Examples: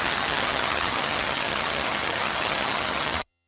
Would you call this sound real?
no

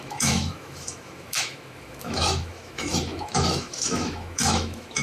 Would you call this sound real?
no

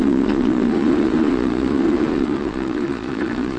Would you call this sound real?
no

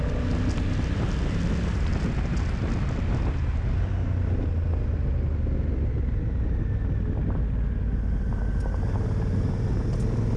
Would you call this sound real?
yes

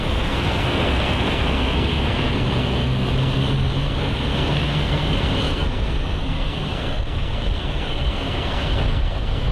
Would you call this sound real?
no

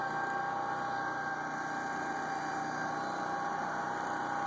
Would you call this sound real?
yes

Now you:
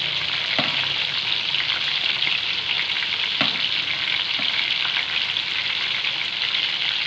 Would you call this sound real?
yes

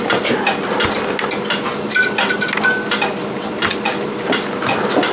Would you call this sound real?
yes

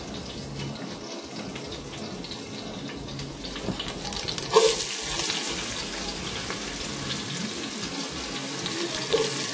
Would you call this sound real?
yes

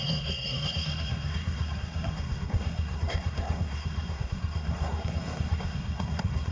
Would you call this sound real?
no